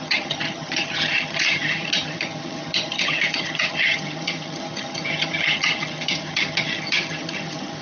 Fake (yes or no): yes